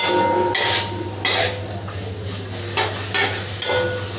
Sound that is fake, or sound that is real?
real